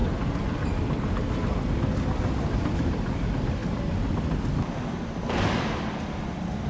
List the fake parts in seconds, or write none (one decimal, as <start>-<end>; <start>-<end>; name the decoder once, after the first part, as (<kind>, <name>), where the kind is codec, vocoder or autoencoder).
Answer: none

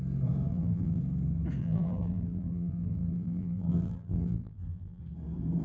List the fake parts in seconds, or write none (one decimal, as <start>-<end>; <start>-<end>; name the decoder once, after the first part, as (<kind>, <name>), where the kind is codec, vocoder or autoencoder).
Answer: 0.5-1.0 (vocoder, BigVGAN v2); 1.6-5.0

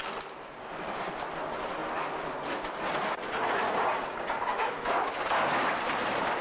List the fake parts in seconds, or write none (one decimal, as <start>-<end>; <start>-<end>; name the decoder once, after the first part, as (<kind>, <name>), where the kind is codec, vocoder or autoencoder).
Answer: 4.5-5.1 (autoencoder, DAC-VAE)